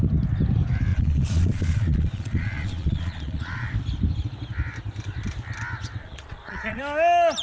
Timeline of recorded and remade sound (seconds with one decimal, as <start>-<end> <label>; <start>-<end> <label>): 0.0-0.9 recorded; 0.9-3.7 remade; 3.7-6.0 recorded; 6.0-6.8 remade; 6.8-7.4 recorded